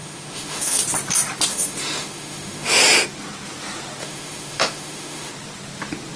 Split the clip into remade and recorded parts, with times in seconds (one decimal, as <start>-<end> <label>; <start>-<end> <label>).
0.0-0.8 remade; 0.8-1.5 recorded; 1.5-2.8 remade; 2.8-4.0 recorded; 4.0-5.3 remade; 5.3-6.2 recorded